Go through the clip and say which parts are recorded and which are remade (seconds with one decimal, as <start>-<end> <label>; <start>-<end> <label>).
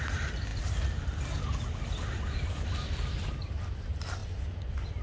0.0-5.0 recorded